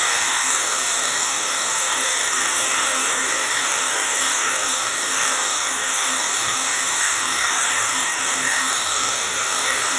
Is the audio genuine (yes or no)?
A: no